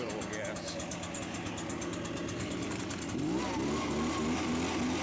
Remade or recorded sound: recorded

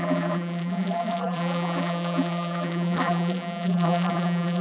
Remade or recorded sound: remade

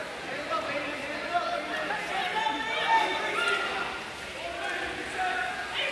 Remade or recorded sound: recorded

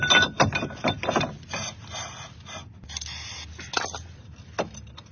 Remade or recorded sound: recorded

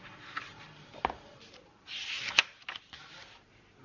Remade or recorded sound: recorded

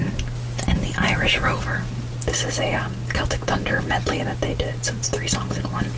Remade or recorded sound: recorded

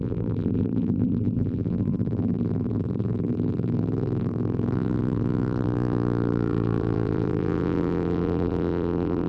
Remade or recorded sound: remade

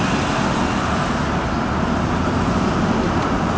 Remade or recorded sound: recorded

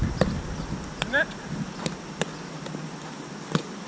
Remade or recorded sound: recorded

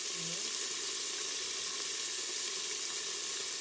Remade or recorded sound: recorded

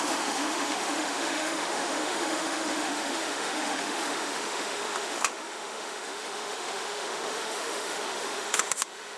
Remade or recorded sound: remade